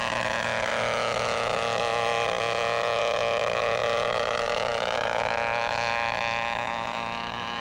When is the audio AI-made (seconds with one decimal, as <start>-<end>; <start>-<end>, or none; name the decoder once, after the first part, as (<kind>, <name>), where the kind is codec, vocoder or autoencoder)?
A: 0.0-7.6 (autoencoder, DAC-VAE)